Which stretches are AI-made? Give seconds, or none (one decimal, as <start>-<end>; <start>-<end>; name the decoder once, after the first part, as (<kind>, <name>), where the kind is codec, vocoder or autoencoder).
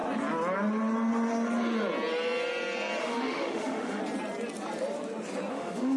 3.0-4.0 (autoencoder, DAC-VAE); 5.5-6.0